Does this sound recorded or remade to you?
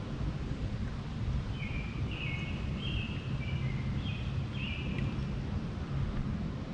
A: recorded